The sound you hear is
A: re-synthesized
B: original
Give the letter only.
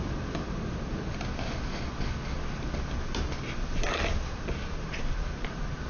B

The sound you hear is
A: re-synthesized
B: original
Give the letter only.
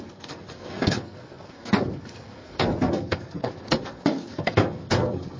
A